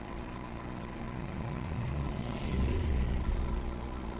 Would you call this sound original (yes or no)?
no